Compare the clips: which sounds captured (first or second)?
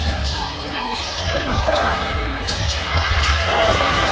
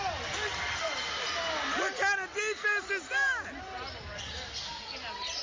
second